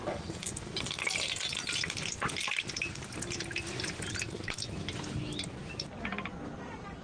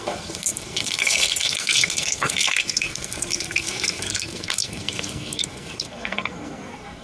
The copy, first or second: second